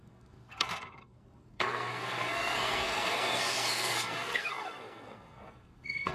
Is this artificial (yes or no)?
yes